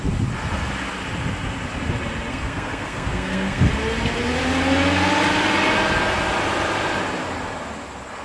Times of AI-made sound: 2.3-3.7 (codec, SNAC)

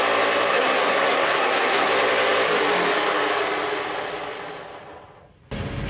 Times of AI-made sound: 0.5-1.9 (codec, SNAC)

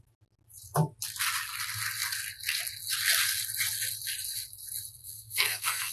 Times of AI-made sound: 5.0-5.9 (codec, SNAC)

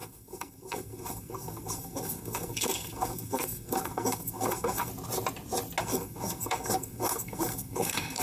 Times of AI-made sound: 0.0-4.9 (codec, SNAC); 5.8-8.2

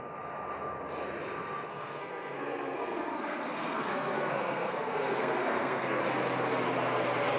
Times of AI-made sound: 1.7-6.0 (codec, SNAC)